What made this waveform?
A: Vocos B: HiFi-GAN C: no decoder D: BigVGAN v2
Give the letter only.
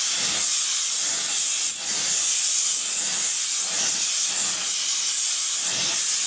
C